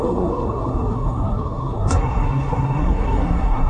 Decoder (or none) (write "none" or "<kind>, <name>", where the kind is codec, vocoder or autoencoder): codec, SNAC